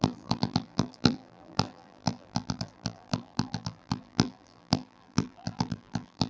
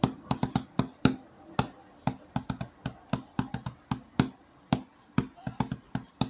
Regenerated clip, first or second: first